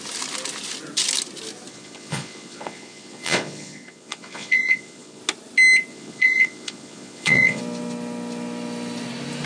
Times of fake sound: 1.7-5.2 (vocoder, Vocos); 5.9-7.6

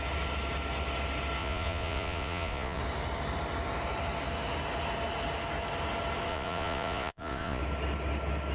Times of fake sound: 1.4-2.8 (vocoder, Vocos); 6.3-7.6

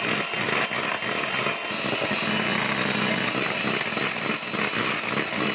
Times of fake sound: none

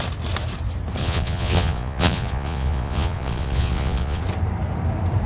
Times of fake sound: 1.0-4.2 (vocoder, Vocos)

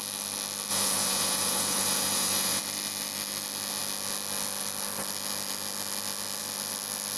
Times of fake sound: 0.7-2.6 (vocoder, Vocos)

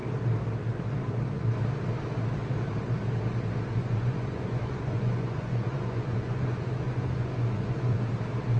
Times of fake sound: 3.8-8.0 (vocoder, Vocos)

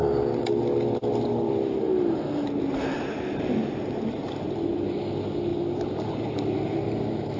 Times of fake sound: none

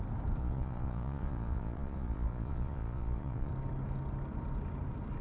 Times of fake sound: 0.4-3.5 (vocoder, Vocos)